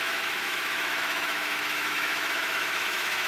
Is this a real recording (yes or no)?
no